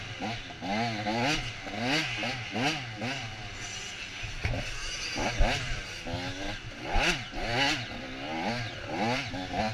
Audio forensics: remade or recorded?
recorded